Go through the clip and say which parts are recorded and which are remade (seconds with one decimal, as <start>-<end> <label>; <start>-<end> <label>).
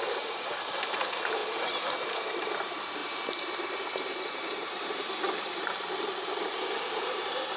0.0-7.6 remade